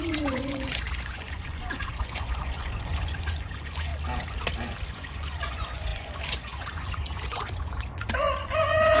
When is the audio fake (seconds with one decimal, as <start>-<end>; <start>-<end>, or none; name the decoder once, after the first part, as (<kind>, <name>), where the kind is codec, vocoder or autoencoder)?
0.0-3.9 (vocoder, Vocos); 4.9-9.0